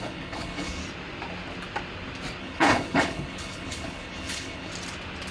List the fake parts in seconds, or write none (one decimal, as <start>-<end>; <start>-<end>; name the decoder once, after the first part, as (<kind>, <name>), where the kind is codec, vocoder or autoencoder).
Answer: 0.0-0.8 (codec, HILCodec); 2.4-4.7